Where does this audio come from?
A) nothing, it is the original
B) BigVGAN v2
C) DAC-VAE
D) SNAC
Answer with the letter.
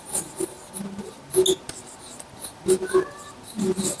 A